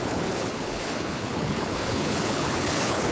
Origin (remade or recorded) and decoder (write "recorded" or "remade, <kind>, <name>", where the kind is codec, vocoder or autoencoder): remade, codec, HILCodec